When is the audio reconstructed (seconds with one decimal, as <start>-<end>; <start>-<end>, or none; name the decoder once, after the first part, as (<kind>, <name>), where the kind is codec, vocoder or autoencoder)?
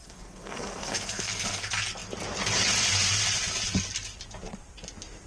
0.0-1.6 (codec, SNAC)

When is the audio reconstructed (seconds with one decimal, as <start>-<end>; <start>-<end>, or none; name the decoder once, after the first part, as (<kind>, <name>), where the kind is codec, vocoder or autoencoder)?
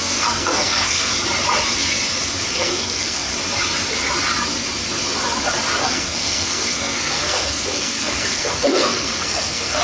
0.0-1.1 (codec, SNAC); 2.5-3.3; 5.8-9.8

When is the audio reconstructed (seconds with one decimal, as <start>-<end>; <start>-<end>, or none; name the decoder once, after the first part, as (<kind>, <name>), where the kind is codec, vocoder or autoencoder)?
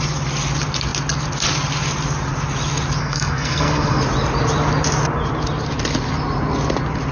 3.0-4.0 (codec, SNAC)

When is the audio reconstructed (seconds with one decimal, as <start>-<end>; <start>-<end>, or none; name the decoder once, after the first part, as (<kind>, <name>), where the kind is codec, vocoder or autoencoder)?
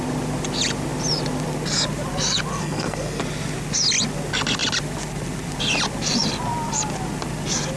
2.5-3.2 (codec, SNAC)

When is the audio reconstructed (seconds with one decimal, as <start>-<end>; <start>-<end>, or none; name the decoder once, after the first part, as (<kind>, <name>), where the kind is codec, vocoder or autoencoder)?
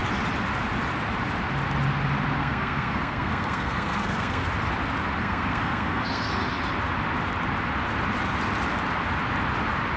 2.4-4.5 (codec, SNAC); 5.2-6.3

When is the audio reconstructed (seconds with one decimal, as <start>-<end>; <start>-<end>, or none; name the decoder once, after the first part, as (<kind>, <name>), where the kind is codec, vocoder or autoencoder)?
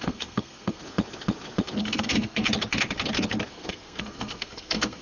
0.0-0.8 (codec, SNAC); 1.8-2.4; 3.5-5.0